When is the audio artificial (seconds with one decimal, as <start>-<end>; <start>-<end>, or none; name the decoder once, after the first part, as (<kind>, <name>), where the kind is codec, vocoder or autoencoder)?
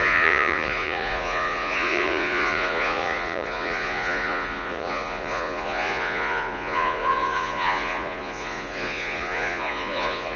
0.0-10.4 (vocoder, Vocos)